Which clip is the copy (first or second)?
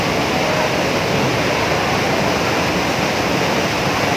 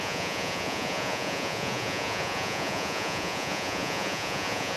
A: second